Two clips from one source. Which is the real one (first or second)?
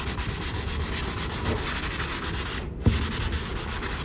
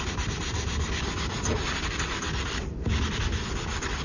first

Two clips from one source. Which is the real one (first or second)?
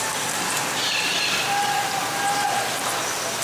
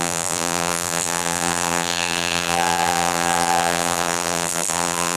first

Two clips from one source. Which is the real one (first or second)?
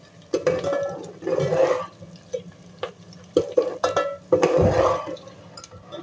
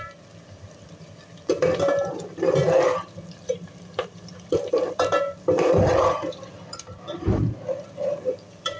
first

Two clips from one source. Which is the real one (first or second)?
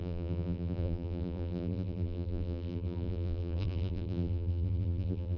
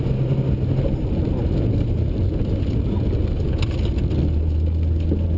second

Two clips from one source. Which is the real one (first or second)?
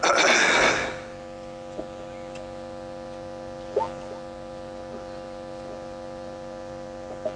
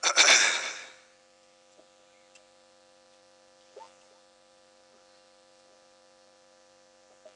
first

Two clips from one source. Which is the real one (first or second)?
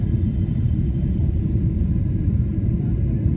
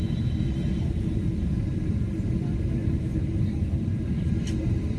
second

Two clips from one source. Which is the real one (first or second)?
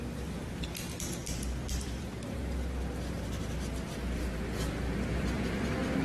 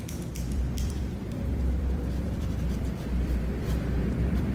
first